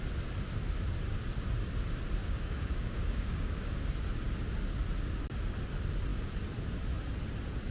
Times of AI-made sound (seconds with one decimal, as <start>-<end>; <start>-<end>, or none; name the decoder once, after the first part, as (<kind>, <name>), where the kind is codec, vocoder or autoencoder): 2.2-3.9 (codec, DAC)